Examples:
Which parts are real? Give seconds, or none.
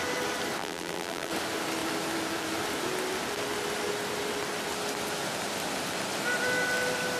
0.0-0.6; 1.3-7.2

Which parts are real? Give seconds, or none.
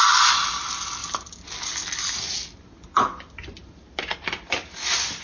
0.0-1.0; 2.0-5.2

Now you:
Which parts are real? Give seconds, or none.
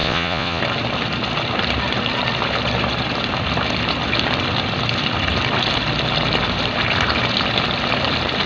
0.6-8.5